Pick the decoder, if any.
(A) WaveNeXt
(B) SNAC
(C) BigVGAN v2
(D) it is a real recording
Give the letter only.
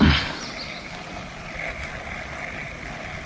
D